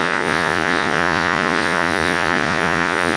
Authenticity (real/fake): fake